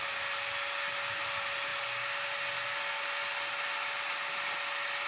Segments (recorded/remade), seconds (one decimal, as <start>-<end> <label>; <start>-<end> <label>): 0.0-5.1 recorded